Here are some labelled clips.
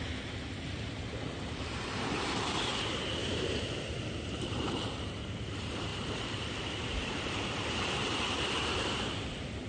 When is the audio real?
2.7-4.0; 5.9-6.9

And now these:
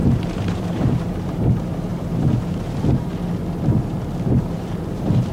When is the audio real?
3.1-4.3

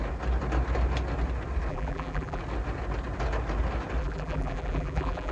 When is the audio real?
0.0-1.7; 2.4-4.0

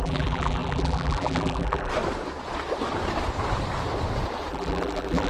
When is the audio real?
1.9-4.5

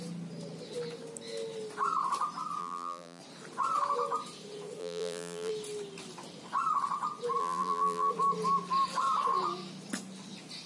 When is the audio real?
0.0-2.6; 3.2-4.8; 5.5-7.4; 8.1-10.7

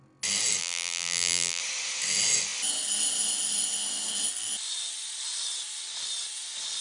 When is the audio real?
0.0-0.6; 1.6-6.8

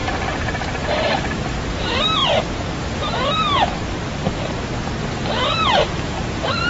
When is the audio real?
4.2-5.5

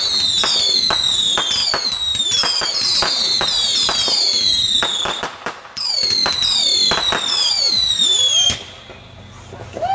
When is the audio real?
0.0-2.1; 2.8-4.9; 5.8-9.9